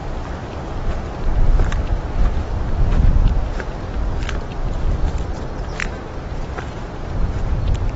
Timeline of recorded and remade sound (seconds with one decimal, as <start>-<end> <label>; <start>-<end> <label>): 0.0-3.3 recorded; 3.3-5.8 remade; 5.8-7.4 recorded; 7.4-8.0 remade